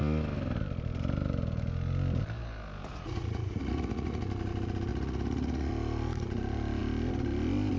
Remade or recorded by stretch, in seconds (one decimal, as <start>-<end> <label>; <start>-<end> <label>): 0.0-2.9 recorded; 2.9-4.2 remade; 4.2-4.9 recorded; 4.9-5.7 remade; 5.7-7.8 recorded